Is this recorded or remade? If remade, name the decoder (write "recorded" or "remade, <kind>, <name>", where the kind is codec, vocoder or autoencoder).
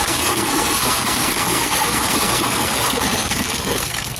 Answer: remade, codec, SNAC